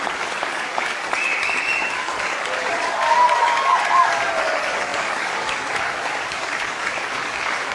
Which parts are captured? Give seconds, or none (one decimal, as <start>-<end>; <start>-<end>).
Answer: none